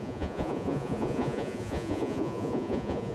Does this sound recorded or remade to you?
remade